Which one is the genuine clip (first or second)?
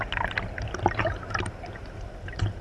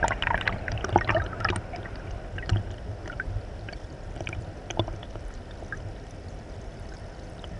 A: first